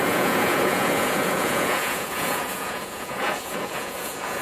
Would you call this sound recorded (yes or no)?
no